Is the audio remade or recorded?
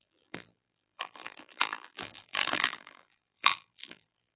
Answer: remade